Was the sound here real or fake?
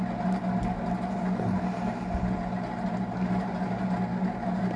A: real